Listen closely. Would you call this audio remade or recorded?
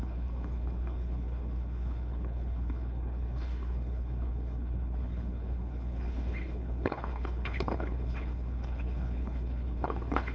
remade